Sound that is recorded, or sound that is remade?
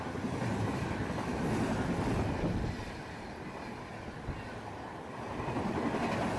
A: recorded